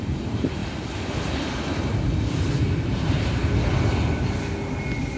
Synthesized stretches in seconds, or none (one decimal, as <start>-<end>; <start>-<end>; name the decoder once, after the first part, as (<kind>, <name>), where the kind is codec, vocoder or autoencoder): 0.0-0.6 (vocoder, BigVGAN v2); 2.9-3.4